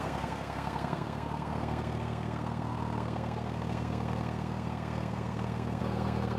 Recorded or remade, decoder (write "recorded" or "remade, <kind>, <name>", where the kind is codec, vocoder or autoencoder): remade, codec, SNAC